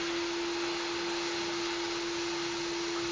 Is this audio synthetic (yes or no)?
no